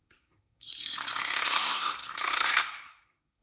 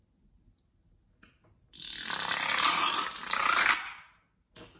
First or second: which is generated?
first